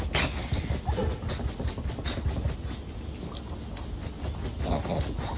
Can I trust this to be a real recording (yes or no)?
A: yes